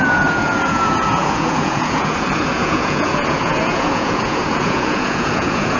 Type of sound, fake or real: fake